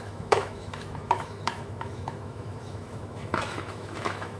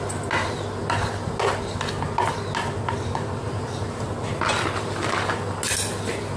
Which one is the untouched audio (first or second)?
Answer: second